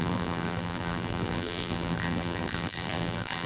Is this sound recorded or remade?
remade